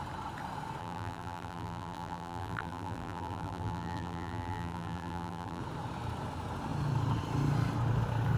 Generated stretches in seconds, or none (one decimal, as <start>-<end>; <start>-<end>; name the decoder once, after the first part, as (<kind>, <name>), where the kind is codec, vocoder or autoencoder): 0.8-5.6 (vocoder, BigVGAN v2)